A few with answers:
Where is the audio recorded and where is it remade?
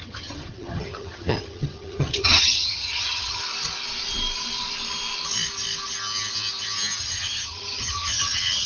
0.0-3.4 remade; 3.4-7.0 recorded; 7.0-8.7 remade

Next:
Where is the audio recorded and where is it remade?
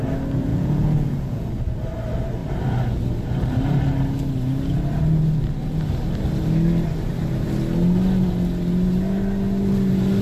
0.0-0.5 recorded; 0.5-1.5 remade; 1.5-10.2 recorded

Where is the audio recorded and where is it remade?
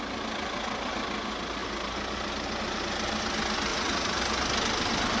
0.0-3.7 recorded; 3.7-4.2 remade; 4.2-5.2 recorded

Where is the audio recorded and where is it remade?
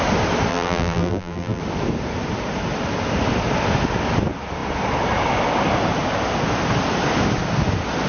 0.0-0.5 recorded; 0.5-1.6 remade; 1.6-8.1 recorded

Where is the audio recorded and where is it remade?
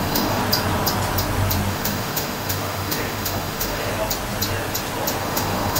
0.0-0.4 remade; 0.4-1.7 recorded; 1.7-3.9 remade; 3.9-5.2 recorded; 5.2-5.8 remade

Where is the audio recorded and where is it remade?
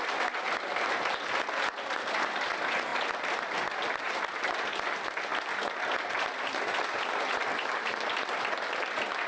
0.0-9.3 recorded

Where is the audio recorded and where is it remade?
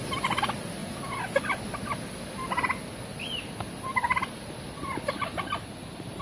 0.0-6.2 recorded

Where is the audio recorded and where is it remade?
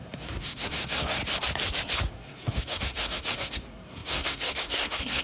0.0-1.2 remade; 1.2-2.1 recorded; 2.1-5.2 remade